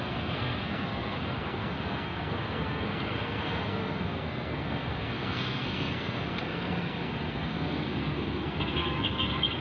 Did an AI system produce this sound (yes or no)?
yes